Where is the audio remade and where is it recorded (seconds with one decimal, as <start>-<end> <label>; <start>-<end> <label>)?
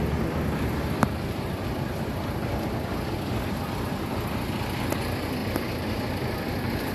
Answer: 0.0-6.9 recorded